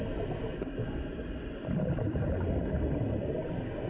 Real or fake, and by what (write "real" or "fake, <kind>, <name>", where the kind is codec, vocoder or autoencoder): real